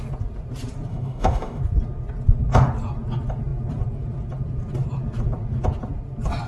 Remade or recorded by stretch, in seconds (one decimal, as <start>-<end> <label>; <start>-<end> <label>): 0.0-0.9 recorded; 0.9-1.6 remade; 1.6-6.5 recorded